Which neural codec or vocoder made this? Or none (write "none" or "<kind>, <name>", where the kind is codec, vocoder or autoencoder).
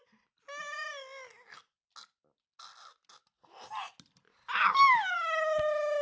none